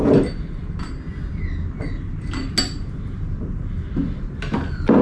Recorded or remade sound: recorded